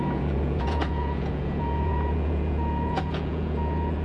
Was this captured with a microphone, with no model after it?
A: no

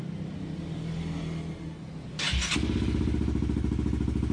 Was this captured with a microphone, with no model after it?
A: yes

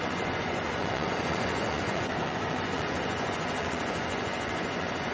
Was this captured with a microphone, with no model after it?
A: no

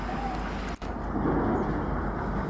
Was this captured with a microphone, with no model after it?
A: yes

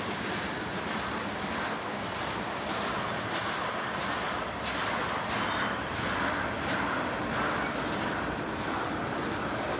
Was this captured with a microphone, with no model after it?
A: yes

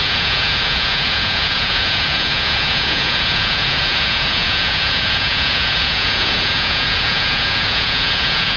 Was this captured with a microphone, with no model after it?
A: no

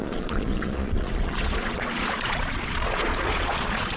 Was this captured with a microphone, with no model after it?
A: no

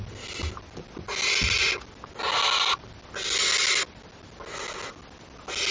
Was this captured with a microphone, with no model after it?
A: yes